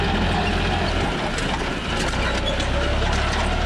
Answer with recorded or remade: recorded